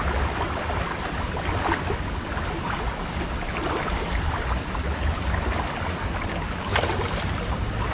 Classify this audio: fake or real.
real